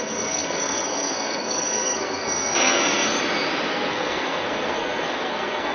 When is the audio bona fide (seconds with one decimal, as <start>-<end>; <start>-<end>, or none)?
3.1-3.7